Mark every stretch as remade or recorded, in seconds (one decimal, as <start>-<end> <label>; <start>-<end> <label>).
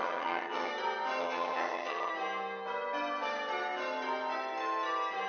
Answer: 0.0-0.7 remade; 0.7-1.2 recorded; 1.2-2.1 remade; 2.1-5.3 recorded